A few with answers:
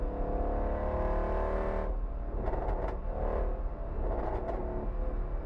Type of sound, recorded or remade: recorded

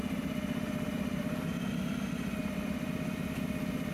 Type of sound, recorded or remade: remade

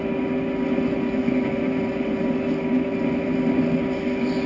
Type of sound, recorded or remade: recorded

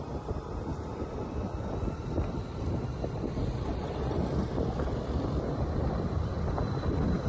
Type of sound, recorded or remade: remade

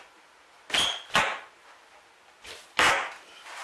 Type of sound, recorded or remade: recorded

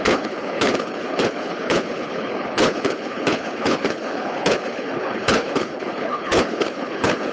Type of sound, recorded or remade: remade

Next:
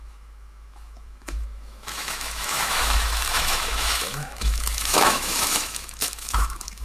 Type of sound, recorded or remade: remade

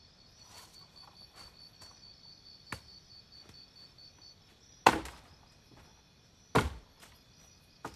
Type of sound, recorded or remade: recorded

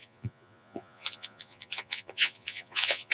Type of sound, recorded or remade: remade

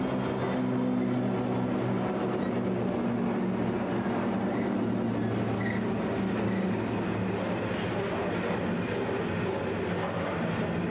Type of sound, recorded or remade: recorded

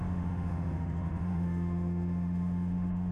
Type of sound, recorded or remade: remade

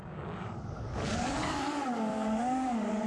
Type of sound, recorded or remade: remade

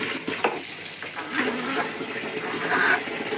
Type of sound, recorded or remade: recorded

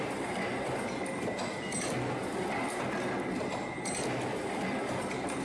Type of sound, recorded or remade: recorded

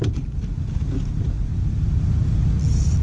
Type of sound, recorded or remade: recorded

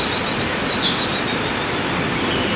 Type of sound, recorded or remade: recorded